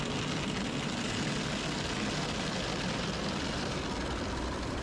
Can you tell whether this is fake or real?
real